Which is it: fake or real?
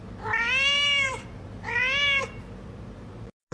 fake